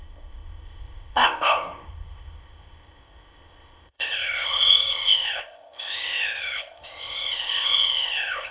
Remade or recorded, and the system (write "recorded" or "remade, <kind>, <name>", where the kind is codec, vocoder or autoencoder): remade, codec, ZipCodec